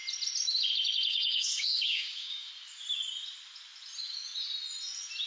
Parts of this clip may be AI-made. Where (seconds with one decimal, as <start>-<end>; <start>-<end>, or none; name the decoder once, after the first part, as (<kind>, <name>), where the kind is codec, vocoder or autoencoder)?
1.1-2.5 (codec, DAC)